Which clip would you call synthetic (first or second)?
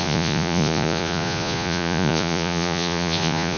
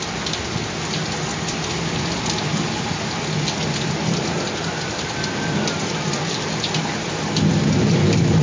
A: first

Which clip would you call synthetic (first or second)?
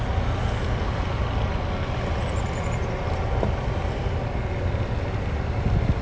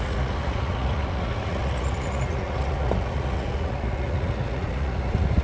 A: second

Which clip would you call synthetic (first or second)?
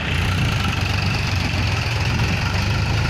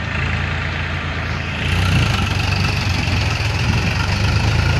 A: first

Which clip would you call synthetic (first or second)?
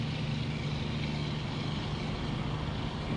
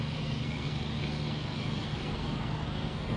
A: second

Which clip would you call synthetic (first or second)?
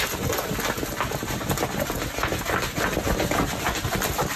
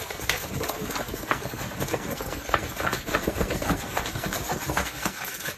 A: second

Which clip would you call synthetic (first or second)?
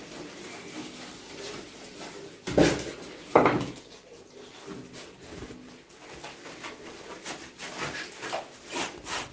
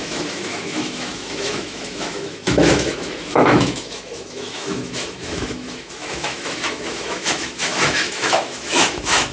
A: second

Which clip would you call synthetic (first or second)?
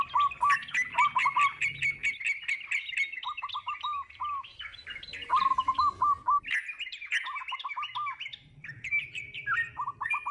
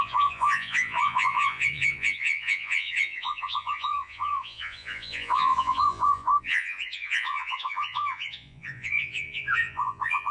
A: second